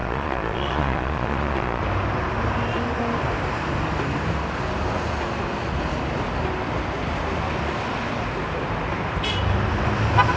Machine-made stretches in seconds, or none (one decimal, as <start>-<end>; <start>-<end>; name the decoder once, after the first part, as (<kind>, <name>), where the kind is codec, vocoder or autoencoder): 0.0-1.8 (vocoder, Vocos)